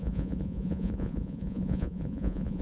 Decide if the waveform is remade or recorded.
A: remade